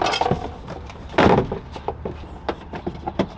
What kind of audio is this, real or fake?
real